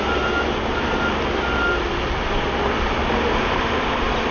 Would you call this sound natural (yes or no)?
yes